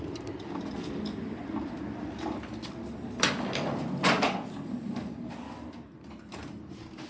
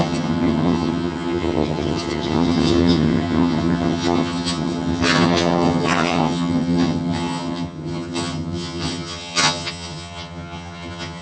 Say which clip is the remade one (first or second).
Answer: second